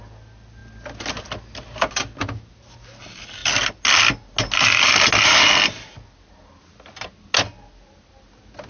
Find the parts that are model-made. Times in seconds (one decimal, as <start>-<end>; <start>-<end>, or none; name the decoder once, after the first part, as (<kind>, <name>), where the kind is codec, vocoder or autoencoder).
none